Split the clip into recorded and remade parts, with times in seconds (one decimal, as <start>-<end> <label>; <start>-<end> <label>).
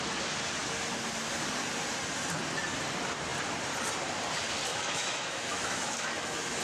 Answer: 0.0-4.7 recorded; 4.7-6.6 remade